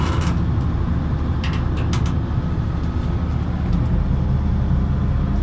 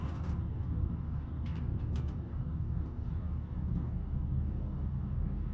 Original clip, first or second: first